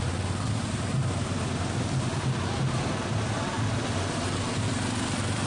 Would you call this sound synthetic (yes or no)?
no